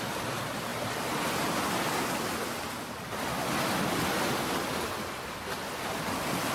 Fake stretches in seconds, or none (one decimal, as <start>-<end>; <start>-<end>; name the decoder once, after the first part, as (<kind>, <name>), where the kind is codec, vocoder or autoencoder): none